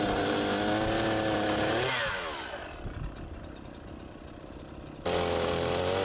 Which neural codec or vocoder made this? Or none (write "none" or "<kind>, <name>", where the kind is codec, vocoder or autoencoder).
none